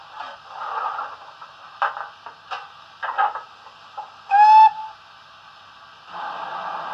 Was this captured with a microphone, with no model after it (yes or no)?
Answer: yes